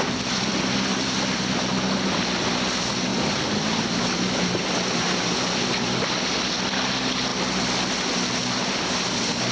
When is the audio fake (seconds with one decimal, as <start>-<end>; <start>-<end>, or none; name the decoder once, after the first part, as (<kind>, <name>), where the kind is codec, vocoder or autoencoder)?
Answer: none